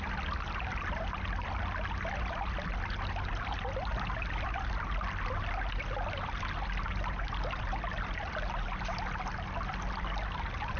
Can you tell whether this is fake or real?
real